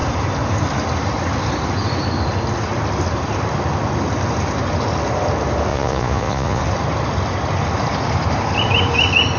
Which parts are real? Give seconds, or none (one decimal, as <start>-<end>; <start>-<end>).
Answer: 0.0-5.7; 6.6-9.4